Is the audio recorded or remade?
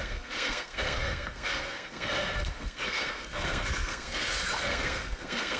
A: remade